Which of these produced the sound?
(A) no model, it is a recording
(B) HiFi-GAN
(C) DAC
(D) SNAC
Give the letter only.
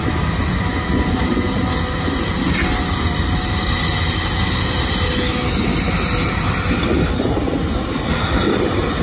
A